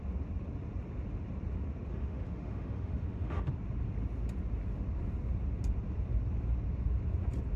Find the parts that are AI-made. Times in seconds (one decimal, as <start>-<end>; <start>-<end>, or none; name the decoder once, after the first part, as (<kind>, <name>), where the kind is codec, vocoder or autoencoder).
1.9-3.5 (autoencoder, DAC-VAE)